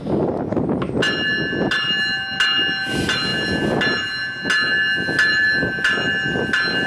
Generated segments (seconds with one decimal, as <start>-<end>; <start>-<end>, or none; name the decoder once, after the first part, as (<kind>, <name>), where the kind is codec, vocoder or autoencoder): none